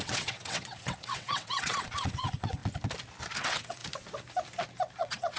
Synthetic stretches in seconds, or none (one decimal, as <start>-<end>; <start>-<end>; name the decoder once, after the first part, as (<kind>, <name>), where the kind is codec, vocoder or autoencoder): 0.0-2.6 (vocoder, WaveNeXt); 3.4-3.8; 5.0-5.4